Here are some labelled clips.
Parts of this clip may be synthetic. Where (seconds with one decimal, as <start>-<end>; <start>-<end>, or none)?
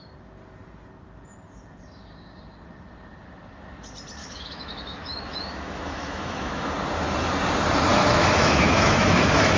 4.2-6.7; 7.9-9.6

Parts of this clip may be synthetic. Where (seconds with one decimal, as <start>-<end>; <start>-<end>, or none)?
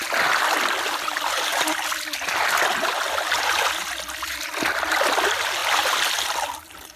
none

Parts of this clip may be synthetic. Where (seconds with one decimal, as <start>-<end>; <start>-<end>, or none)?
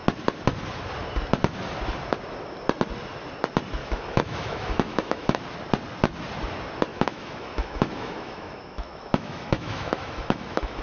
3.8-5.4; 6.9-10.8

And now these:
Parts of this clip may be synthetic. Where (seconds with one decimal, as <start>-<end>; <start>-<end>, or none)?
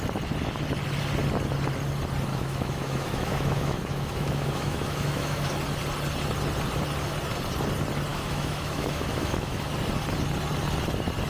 2.3-5.5; 8.1-9.7